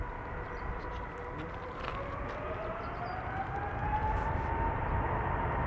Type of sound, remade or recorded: recorded